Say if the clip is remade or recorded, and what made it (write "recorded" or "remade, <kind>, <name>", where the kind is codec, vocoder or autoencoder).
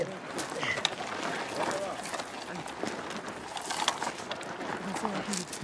recorded